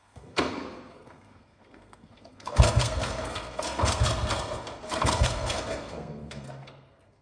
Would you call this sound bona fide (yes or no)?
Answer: no